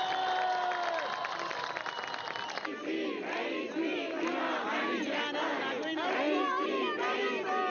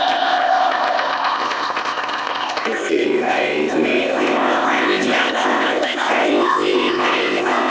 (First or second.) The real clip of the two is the first